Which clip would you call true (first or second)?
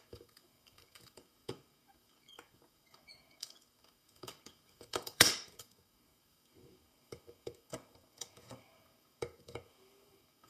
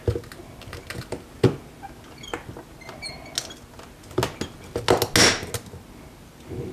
second